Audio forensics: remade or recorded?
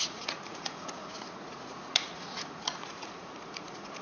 remade